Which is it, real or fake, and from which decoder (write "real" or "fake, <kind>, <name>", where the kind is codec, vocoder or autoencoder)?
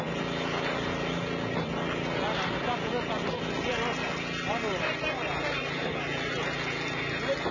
real